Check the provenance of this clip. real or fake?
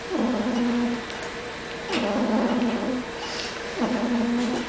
real